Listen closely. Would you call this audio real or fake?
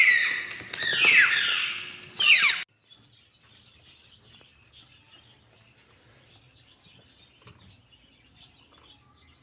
real